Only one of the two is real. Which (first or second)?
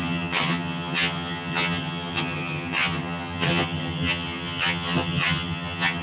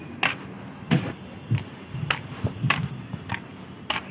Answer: second